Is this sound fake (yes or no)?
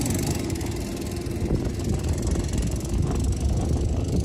no